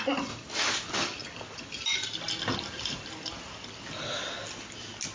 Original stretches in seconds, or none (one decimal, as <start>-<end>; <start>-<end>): 0.0-5.1